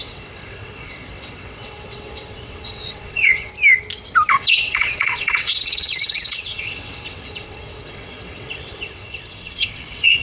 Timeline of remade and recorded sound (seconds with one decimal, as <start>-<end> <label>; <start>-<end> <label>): 0.0-3.5 remade; 3.5-4.3 recorded; 4.3-10.2 remade